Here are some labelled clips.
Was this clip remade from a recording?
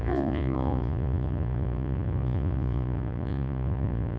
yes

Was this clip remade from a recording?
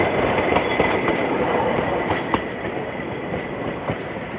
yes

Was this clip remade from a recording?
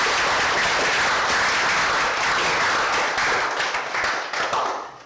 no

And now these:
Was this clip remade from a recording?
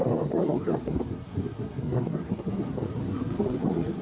yes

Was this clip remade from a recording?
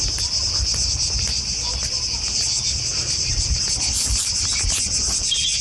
no